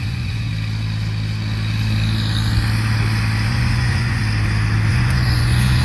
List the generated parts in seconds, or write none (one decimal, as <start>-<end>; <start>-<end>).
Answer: 0.0-0.5; 3.5-4.2; 4.9-5.8